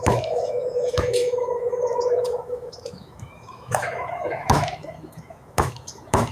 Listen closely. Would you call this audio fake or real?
fake